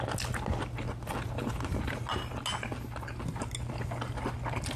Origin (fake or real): real